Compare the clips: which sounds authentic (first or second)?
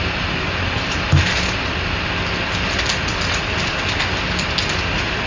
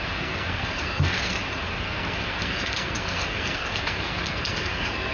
first